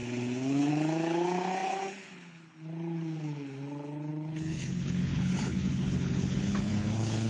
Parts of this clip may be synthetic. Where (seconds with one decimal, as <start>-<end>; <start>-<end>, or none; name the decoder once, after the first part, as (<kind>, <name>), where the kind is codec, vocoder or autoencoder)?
0.0-7.3 (codec, HILCodec)